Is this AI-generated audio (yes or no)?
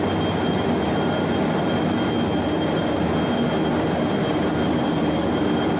no